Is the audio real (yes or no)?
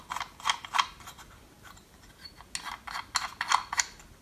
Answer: yes